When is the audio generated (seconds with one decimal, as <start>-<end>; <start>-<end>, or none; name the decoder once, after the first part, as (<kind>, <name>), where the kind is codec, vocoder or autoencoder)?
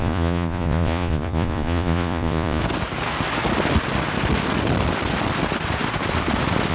0.0-2.6 (vocoder, Vocos)